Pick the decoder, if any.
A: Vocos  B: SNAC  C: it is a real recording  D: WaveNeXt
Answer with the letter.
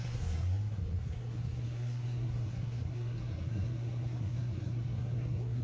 B